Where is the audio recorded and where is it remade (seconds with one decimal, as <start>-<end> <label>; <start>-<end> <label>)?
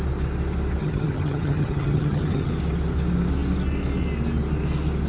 0.0-0.8 recorded; 0.8-2.5 remade; 2.5-5.1 recorded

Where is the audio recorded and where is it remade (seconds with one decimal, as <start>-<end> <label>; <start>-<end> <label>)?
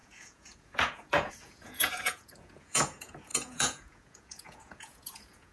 0.0-5.5 remade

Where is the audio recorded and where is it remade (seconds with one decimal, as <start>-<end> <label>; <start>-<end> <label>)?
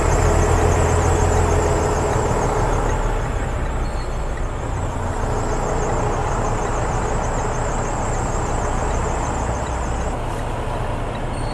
0.0-6.2 recorded; 6.2-9.8 remade; 9.8-11.5 recorded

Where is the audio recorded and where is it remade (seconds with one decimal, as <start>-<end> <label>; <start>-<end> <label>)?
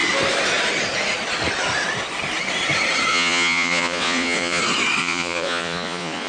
0.0-3.1 recorded; 3.1-4.6 remade; 4.6-5.0 recorded; 5.0-6.3 remade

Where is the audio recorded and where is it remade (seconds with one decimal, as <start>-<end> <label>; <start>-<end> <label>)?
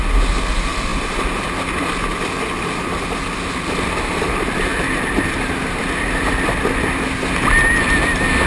0.0-4.7 recorded; 4.7-5.8 remade; 5.8-8.5 recorded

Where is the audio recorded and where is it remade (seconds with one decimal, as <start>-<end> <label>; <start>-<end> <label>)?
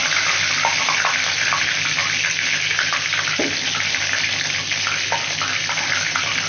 0.0-6.5 recorded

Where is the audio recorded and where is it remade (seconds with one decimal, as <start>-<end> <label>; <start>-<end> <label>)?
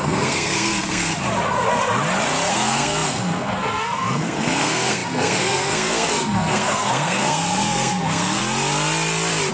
0.0-1.1 remade; 1.1-2.5 recorded; 2.5-8.4 remade; 8.4-9.5 recorded